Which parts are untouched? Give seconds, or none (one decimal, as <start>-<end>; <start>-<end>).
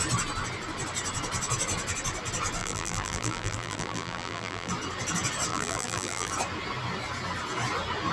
0.0-2.6; 4.7-5.5; 6.3-8.1